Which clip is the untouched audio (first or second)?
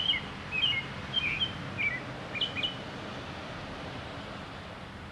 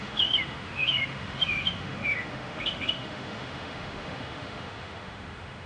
first